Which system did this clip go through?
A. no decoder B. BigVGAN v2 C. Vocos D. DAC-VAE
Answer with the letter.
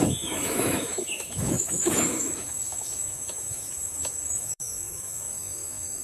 D